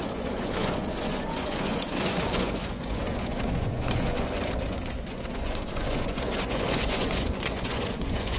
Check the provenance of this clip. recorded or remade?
remade